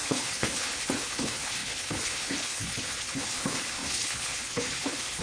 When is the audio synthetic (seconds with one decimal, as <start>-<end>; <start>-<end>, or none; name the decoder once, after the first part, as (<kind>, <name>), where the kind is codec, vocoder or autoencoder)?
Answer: 0.0-5.2 (codec, HILCodec)